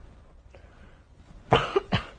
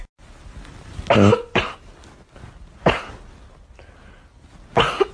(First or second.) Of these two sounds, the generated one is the first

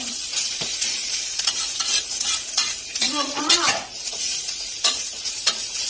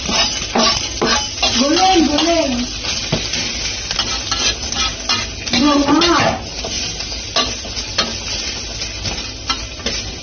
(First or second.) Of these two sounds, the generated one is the first